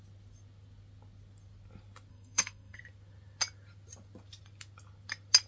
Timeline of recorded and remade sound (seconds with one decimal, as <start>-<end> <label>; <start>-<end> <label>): 0.0-2.1 recorded; 2.1-2.8 remade; 2.8-5.5 recorded